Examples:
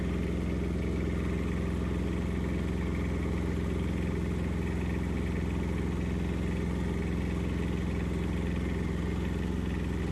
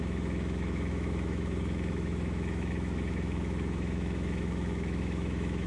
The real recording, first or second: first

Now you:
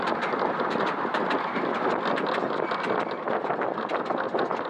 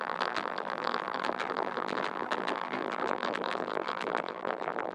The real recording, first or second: first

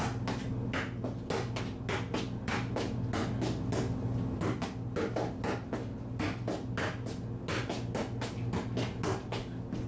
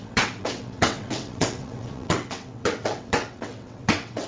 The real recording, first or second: first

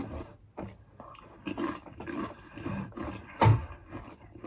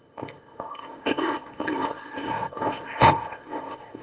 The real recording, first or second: first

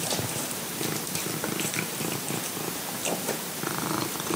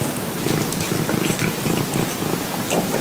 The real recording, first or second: second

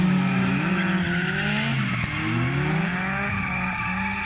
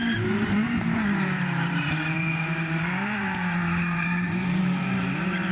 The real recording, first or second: first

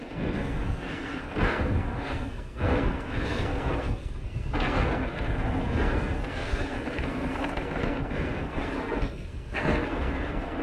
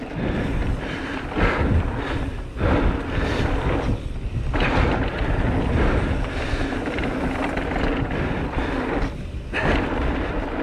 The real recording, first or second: second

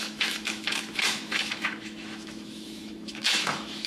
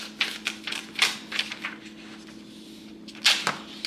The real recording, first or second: second